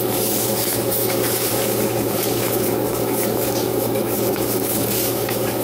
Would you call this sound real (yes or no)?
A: no